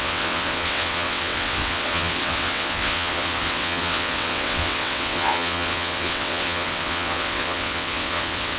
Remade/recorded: remade